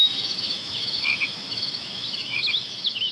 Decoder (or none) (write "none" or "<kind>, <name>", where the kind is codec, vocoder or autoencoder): autoencoder, DAC-VAE